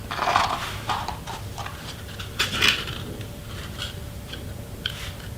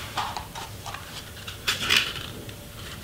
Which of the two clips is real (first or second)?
first